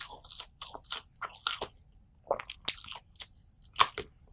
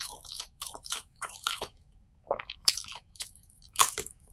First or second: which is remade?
second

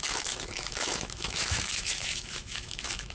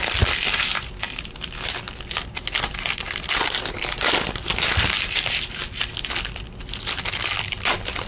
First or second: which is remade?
first